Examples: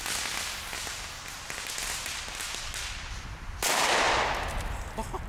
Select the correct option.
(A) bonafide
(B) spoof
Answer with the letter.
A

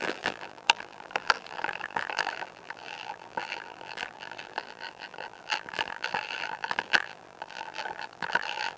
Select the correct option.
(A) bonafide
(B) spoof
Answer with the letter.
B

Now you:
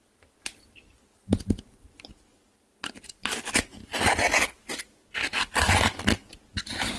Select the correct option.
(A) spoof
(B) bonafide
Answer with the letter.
B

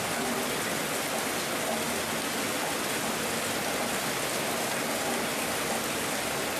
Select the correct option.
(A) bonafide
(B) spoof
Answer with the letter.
A